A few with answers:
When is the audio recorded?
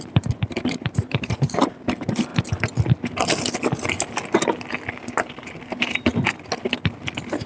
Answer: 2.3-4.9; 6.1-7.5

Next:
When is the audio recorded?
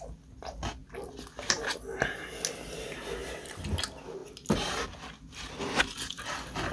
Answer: 0.0-6.7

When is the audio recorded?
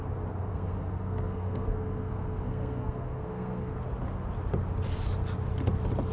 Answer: 0.0-0.5; 3.7-6.1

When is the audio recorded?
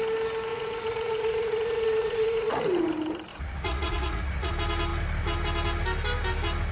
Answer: 0.0-0.5; 2.6-3.3; 4.5-6.7